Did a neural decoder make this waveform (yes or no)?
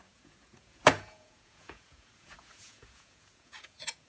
yes